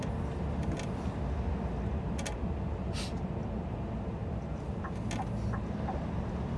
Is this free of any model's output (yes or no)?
yes